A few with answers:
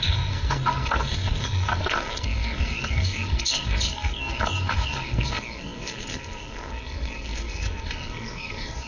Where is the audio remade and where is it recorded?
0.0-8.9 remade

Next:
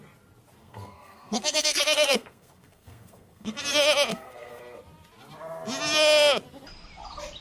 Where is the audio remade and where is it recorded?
0.0-0.6 recorded; 0.6-3.6 remade; 3.6-4.1 recorded; 4.1-4.6 remade; 4.6-7.4 recorded